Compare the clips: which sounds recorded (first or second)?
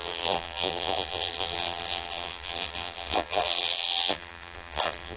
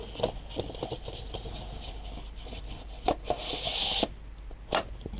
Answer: second